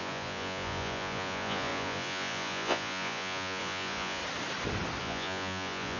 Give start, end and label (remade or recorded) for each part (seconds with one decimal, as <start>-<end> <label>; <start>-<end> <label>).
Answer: 0.0-4.2 remade; 4.2-5.0 recorded; 5.0-6.0 remade